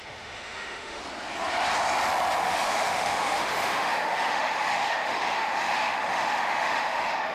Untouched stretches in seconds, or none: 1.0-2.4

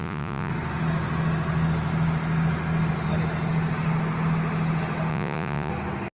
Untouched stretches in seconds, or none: 0.5-5.1; 5.7-6.2

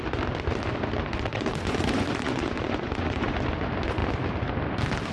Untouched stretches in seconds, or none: 0.0-1.3; 3.4-5.1

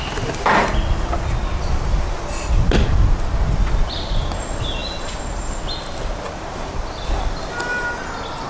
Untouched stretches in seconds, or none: 0.0-8.5

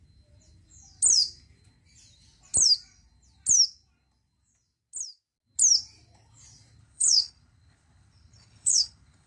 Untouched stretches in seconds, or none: 0.0-6.8

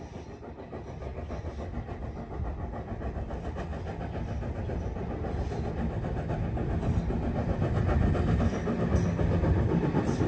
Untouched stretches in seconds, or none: 0.0-10.3

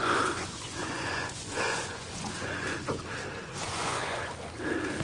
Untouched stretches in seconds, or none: 3.0-3.4; 4.3-5.0